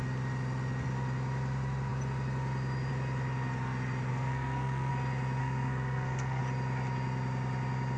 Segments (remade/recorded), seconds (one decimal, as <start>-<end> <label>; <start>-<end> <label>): 0.0-4.1 recorded; 4.1-4.9 remade; 4.9-5.4 recorded; 5.4-6.4 remade; 6.4-8.0 recorded